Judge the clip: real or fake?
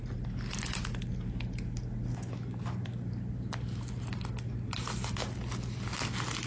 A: real